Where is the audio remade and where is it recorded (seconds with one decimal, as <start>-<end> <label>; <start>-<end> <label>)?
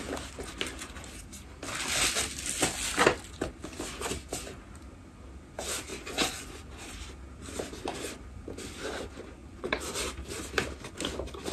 0.0-5.9 recorded; 5.9-6.7 remade; 6.7-9.4 recorded; 9.4-9.9 remade; 9.9-11.5 recorded